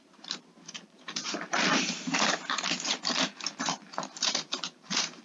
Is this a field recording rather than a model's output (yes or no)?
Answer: no